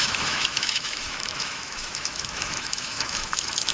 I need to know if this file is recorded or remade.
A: remade